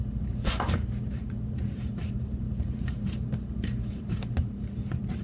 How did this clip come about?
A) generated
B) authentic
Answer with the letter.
A